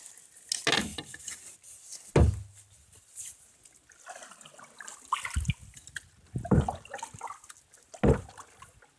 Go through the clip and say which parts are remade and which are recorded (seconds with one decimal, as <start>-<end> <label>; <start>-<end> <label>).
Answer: 0.0-0.9 recorded; 0.9-1.4 remade; 1.4-9.0 recorded